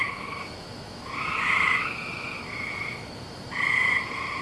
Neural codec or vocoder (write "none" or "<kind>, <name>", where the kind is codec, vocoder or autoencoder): autoencoder, DAC-VAE